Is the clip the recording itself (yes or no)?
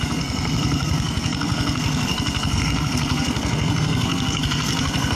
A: no